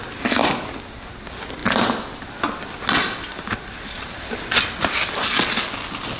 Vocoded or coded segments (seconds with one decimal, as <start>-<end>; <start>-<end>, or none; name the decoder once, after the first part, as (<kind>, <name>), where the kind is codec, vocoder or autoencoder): none